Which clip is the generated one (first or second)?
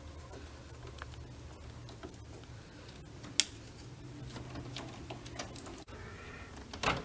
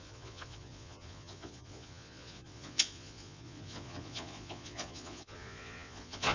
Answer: second